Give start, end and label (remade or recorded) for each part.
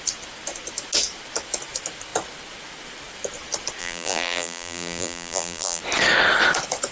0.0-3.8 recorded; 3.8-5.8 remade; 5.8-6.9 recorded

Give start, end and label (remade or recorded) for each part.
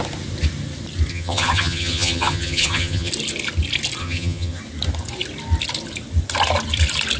0.0-1.1 recorded; 1.1-3.1 remade; 3.1-4.0 recorded; 4.0-4.6 remade; 4.6-7.2 recorded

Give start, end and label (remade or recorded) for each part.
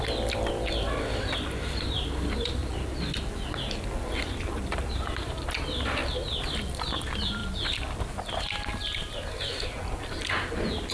0.0-2.6 remade; 2.6-4.2 recorded; 4.2-6.0 remade; 6.0-6.7 recorded; 6.7-7.4 remade; 7.4-10.9 recorded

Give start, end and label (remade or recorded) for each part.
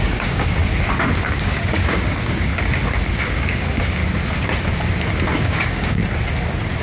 0.0-0.6 remade; 0.6-1.2 recorded; 1.2-2.5 remade; 2.5-3.1 recorded; 3.1-4.0 remade; 4.0-5.2 recorded; 5.2-6.0 remade; 6.0-6.8 recorded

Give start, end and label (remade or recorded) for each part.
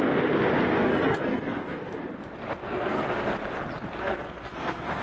0.0-0.8 recorded; 0.8-1.8 remade; 1.8-2.6 recorded; 2.6-3.2 remade; 3.2-4.0 recorded; 4.0-5.0 remade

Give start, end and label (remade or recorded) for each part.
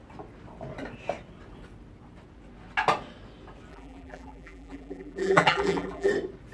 0.0-3.7 recorded; 3.7-6.1 remade; 6.1-6.5 recorded